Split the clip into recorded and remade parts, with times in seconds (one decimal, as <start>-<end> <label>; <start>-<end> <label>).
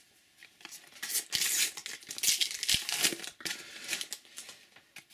0.0-0.4 recorded; 0.4-1.1 remade; 1.1-5.1 recorded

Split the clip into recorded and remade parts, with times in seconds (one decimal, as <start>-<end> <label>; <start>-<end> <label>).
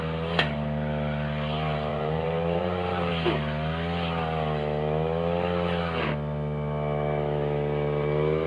0.0-1.9 recorded; 1.9-3.1 remade; 3.1-8.5 recorded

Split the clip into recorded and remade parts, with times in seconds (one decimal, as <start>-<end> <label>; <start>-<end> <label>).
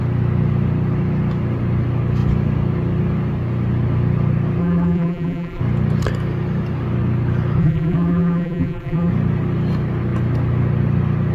0.0-4.6 recorded; 4.6-5.6 remade; 5.6-7.6 recorded; 7.6-9.1 remade; 9.1-11.3 recorded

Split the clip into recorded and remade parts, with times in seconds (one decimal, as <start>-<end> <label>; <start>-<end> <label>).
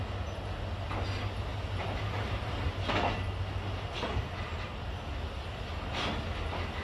0.0-1.5 recorded; 1.5-2.7 remade; 2.7-6.8 recorded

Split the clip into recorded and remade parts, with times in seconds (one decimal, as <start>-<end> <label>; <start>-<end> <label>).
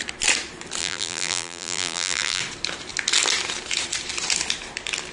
0.0-0.8 recorded; 0.8-2.4 remade; 2.4-5.1 recorded